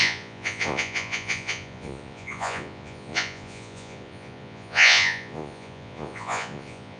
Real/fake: fake